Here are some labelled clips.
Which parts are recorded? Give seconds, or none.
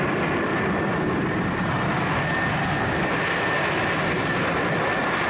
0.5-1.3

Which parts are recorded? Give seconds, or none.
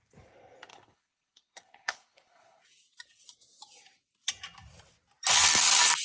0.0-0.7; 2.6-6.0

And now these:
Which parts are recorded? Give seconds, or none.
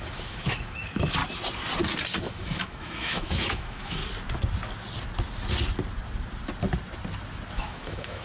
1.2-2.2; 4.0-7.6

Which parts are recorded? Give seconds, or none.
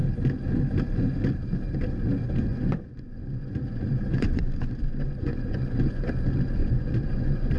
0.0-2.5; 6.0-6.6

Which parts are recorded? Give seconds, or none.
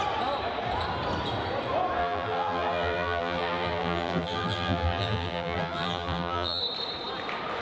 0.0-2.0; 6.6-7.6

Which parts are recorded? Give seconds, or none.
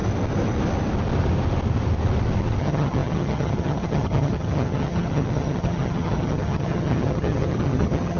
0.0-2.6